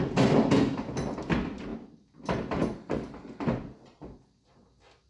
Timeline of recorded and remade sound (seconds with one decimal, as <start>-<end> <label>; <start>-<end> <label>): 0.0-5.1 recorded

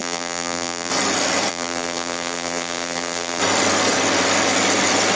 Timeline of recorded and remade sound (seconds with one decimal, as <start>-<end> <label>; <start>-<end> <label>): 0.0-0.9 remade; 0.9-1.5 recorded; 1.5-3.4 remade; 3.4-5.2 recorded

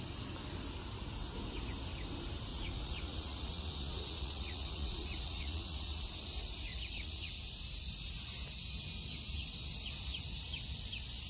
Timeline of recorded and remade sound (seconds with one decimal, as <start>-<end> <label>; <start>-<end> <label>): 0.0-2.5 recorded; 2.5-6.0 remade; 6.0-6.7 recorded; 6.7-7.3 remade; 7.3-11.3 recorded

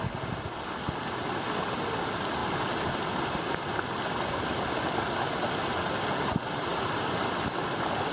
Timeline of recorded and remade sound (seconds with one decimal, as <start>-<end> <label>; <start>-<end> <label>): 0.0-8.1 recorded

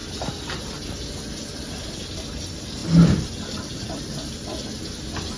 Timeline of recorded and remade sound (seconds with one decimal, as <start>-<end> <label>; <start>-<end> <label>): 0.0-5.4 recorded